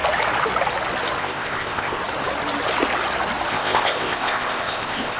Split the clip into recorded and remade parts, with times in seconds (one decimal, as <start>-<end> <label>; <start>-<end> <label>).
0.0-1.2 recorded; 1.2-2.0 remade; 2.0-3.5 recorded; 3.5-5.2 remade